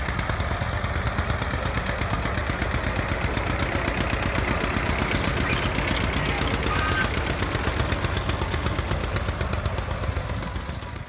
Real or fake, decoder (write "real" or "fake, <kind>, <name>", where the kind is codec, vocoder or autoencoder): real